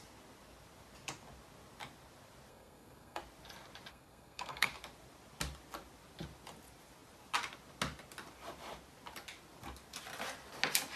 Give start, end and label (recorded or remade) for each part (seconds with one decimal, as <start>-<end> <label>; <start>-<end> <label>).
0.0-2.5 recorded; 2.5-3.2 remade; 3.2-3.9 recorded; 3.9-4.7 remade; 4.7-11.0 recorded